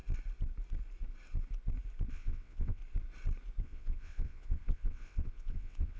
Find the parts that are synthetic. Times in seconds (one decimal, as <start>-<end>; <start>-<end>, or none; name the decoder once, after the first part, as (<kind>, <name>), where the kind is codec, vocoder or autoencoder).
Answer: 2.1-2.8 (vocoder, WaveNeXt); 3.6-6.0